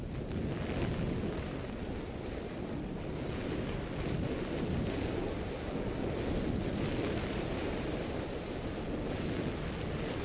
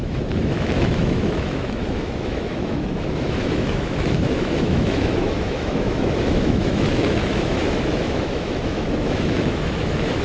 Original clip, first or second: first